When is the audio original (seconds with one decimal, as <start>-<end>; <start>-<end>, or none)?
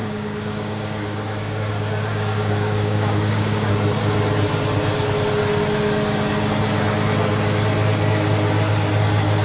1.7-2.1; 3.7-9.4